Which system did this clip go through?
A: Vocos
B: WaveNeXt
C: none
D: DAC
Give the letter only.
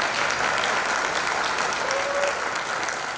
C